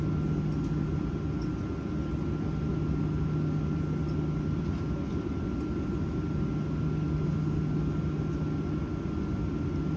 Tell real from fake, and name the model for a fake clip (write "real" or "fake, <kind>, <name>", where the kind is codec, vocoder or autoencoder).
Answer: real